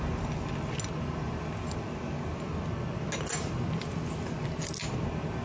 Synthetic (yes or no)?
no